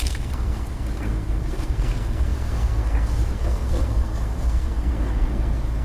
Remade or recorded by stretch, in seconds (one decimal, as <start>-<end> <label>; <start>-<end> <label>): 0.0-5.8 remade